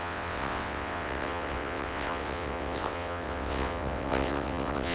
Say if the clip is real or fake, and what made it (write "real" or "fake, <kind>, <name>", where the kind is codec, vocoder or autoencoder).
fake, vocoder, WaveNeXt